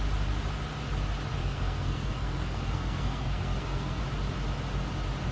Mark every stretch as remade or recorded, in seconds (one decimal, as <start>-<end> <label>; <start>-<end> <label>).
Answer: 0.0-1.4 recorded; 1.4-4.0 remade; 4.0-5.3 recorded